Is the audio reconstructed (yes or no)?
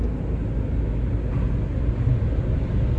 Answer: no